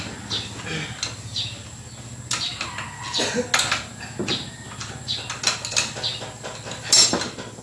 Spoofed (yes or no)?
no